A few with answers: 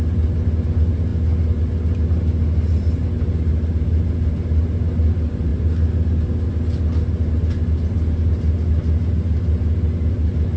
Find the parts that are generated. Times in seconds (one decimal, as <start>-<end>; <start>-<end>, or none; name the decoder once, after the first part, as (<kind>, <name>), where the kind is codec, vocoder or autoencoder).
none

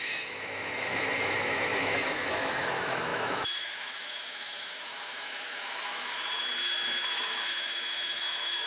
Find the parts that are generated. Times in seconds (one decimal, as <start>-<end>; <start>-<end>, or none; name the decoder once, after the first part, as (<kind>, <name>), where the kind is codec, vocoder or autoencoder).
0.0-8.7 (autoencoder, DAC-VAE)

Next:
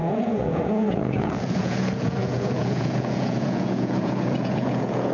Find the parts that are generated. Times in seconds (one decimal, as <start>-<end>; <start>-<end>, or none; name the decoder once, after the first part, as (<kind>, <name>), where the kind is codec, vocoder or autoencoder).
0.0-5.1 (vocoder, Vocos)

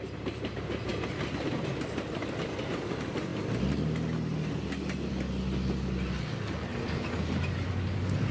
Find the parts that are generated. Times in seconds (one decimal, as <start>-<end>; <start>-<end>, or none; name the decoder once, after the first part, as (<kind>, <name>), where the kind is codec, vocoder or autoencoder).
none

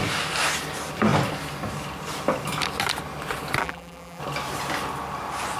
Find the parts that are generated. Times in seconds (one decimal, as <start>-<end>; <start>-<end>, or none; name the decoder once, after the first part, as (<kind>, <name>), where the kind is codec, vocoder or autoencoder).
3.6-4.2 (vocoder, BigVGAN v2)